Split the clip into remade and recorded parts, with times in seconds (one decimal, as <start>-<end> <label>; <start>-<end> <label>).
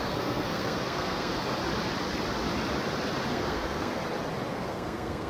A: 0.0-1.6 remade; 1.6-3.3 recorded; 3.3-4.0 remade; 4.0-4.5 recorded; 4.5-5.3 remade